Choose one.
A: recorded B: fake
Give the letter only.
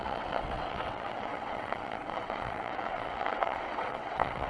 B